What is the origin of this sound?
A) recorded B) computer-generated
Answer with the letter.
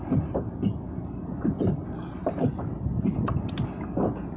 A